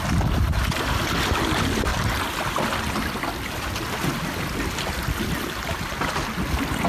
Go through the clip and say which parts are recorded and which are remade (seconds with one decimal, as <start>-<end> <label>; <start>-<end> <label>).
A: 0.0-1.9 recorded; 1.9-3.2 remade; 3.2-4.1 recorded; 4.1-5.9 remade; 5.9-6.9 recorded